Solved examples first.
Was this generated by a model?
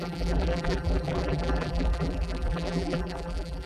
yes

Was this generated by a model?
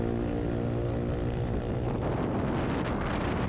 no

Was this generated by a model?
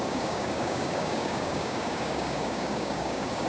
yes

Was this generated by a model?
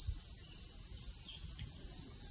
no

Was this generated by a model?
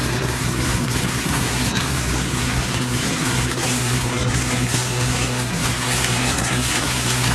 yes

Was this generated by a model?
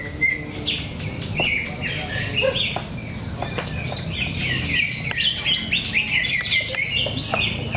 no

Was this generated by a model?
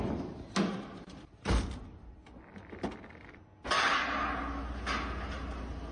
no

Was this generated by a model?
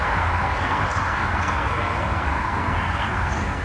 yes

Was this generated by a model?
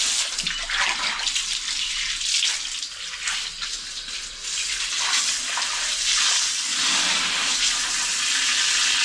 no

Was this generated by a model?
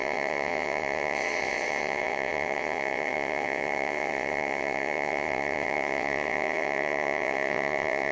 yes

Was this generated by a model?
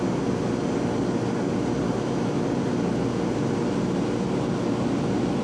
no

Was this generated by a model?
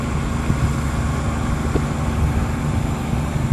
no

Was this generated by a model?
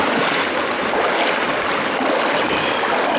no